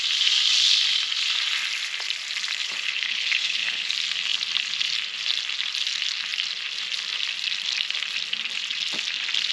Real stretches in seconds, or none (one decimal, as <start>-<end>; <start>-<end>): 0.0-2.6; 3.9-9.5